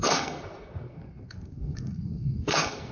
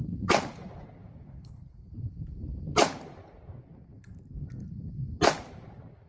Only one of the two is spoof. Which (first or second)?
first